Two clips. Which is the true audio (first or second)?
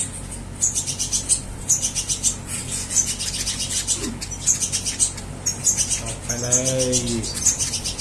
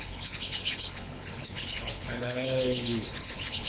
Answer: first